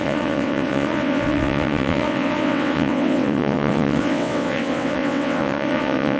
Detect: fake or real fake